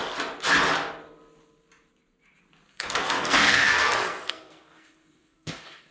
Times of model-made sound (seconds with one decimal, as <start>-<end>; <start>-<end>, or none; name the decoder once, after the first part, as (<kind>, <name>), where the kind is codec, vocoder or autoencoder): 2.7-5.9 (codec, SNAC)